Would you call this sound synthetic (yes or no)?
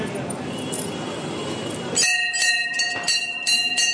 yes